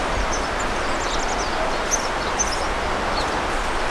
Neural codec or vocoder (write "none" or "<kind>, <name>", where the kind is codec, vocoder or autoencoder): none